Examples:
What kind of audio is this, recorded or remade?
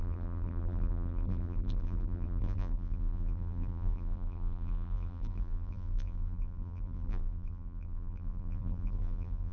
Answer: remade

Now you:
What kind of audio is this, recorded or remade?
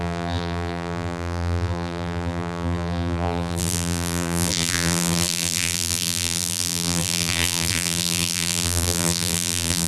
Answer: remade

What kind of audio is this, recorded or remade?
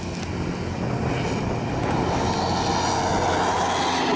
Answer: recorded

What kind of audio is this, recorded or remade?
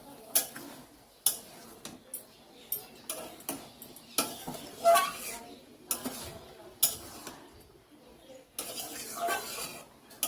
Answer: recorded